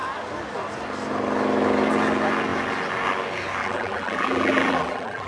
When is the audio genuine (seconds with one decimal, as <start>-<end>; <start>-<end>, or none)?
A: 0.0-3.6